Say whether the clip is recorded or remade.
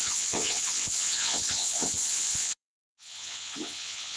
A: remade